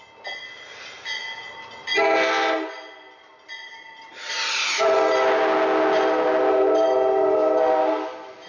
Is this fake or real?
real